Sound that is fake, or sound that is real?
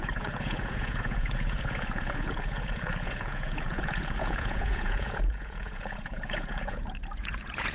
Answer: fake